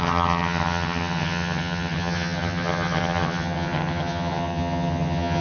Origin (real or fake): fake